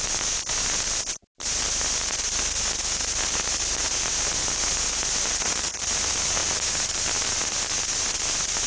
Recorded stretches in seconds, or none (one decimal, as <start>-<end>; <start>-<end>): 0.0-8.7